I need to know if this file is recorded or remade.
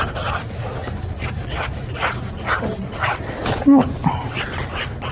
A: recorded